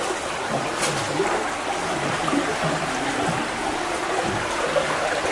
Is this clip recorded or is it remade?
recorded